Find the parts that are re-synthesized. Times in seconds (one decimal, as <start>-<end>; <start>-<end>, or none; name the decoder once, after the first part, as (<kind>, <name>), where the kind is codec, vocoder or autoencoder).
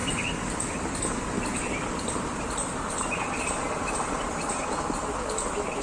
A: none